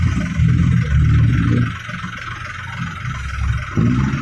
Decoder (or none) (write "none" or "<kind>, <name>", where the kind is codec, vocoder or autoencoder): none